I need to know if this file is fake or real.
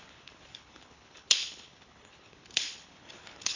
fake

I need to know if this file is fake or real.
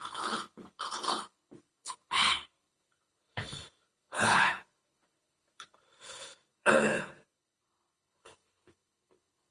fake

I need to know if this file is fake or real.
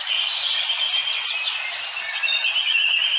real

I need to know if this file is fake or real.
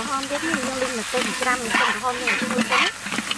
real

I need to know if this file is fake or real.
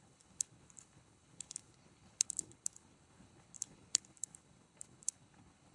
fake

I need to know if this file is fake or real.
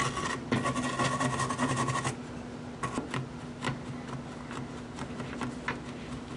real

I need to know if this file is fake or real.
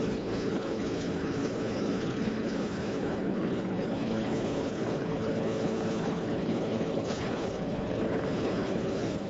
fake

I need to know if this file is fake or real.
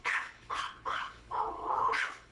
fake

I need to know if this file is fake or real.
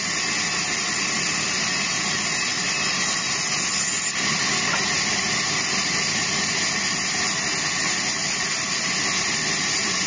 real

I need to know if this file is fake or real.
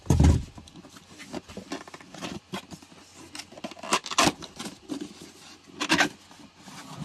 real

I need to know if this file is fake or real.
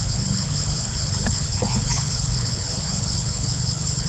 fake